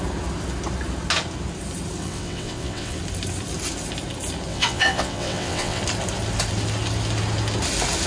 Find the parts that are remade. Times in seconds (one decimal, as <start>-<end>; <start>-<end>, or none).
2.0-3.0; 4.5-5.8